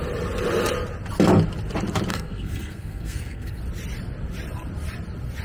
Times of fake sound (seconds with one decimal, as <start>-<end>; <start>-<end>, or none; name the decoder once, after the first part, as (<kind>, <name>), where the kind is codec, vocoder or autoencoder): 2.1-3.6 (codec, SNAC)